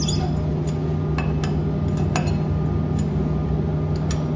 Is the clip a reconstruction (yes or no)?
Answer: no